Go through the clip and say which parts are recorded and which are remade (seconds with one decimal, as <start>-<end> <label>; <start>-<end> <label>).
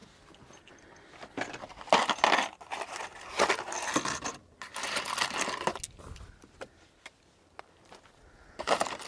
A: 0.0-1.5 remade; 1.5-4.7 recorded; 4.7-5.8 remade; 5.8-9.1 recorded